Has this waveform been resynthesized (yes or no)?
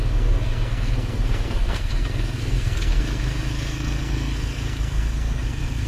yes